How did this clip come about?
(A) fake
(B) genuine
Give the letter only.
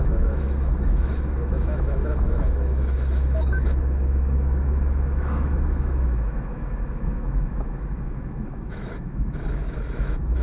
A